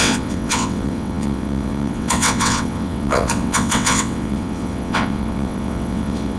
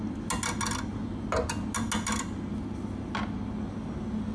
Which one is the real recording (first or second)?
second